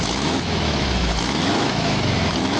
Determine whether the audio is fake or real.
fake